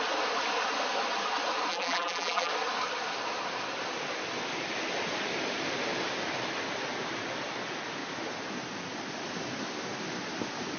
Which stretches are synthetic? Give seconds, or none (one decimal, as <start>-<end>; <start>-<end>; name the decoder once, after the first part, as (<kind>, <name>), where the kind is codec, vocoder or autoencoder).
1.7-2.5 (vocoder, BigVGAN v2)